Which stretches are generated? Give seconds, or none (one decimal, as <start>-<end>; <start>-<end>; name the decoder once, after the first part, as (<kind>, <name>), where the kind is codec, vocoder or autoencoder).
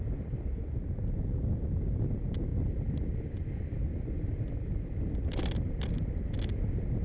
none